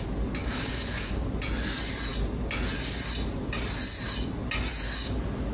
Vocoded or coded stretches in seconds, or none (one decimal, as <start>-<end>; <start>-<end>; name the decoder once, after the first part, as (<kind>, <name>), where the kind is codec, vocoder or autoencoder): 0.4-1.1 (codec, DAC)